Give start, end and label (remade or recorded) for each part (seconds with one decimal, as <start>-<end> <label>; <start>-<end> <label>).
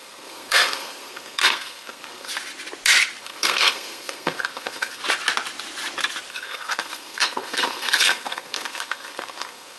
0.0-2.3 remade; 2.3-3.2 recorded; 3.2-5.0 remade; 5.0-6.3 recorded; 6.3-9.8 remade